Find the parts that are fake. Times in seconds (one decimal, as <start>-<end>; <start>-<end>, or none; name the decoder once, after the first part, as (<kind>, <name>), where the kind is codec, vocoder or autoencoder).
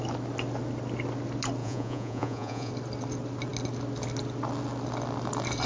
1.6-2.7 (vocoder, Vocos)